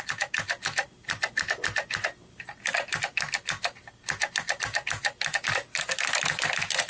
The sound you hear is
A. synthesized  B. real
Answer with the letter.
B